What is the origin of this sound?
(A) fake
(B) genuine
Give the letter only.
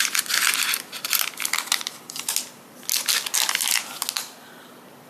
B